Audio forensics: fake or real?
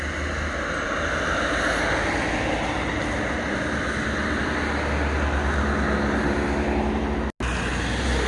real